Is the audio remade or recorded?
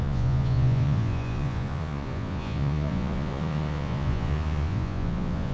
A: remade